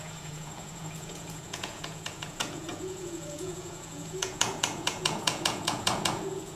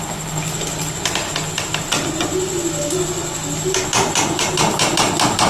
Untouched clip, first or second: second